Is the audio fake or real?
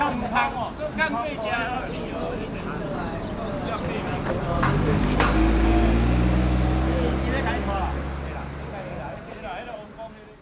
real